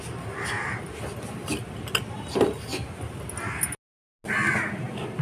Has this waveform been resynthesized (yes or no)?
no